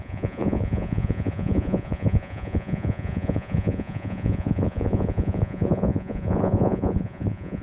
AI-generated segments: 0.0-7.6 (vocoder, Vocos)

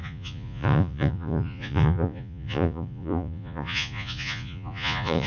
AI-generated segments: 0.0-5.3 (vocoder, Vocos)